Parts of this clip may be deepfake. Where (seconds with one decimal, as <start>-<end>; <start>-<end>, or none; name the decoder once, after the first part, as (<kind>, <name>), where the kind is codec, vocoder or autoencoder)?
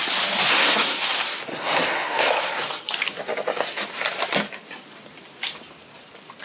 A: 0.5-1.0 (codec, SNAC); 1.5-2.3